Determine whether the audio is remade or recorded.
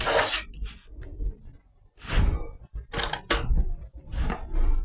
recorded